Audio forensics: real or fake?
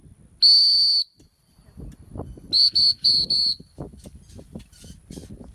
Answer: real